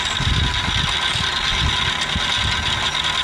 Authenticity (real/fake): real